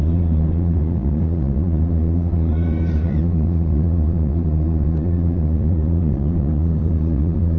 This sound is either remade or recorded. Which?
remade